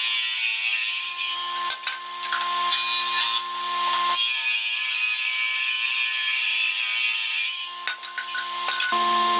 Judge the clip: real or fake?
real